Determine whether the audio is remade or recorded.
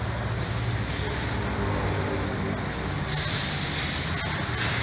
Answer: recorded